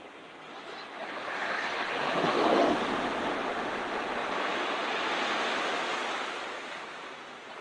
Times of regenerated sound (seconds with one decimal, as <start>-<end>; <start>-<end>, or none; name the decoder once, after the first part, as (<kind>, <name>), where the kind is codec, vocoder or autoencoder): 1.0-1.7 (vocoder, BigVGAN v2)